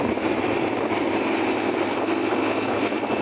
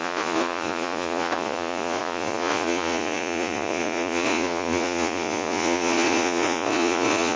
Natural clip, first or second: first